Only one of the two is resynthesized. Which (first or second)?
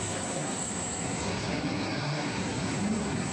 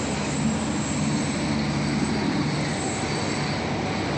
first